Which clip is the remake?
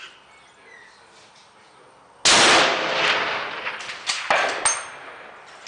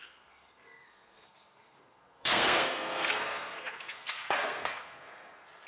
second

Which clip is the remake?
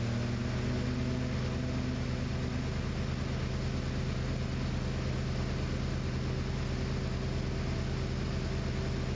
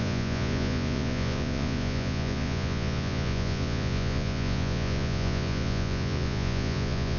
second